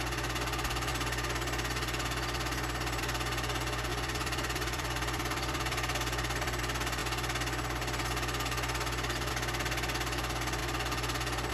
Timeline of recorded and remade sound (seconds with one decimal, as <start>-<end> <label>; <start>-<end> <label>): 0.0-3.9 recorded; 3.9-6.6 remade; 6.6-11.5 recorded